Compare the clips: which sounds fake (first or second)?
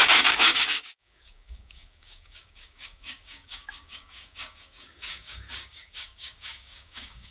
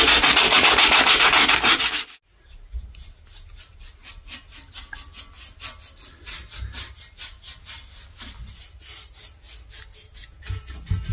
first